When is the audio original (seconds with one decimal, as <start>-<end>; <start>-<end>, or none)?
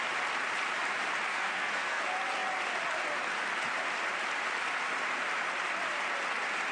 0.0-1.3; 2.0-6.7